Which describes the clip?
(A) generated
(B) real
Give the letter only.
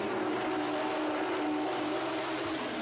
B